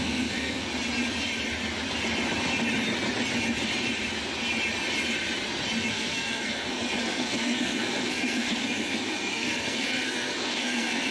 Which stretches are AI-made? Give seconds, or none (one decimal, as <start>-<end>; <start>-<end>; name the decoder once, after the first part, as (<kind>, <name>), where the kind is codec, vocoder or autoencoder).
0.0-0.7 (codec, SNAC); 5.9-11.1